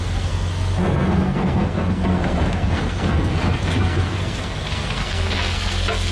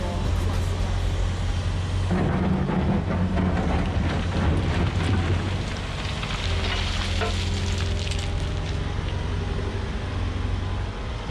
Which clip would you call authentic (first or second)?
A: second